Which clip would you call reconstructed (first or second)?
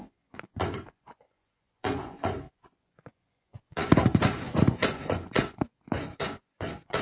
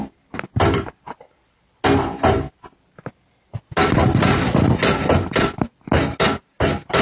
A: first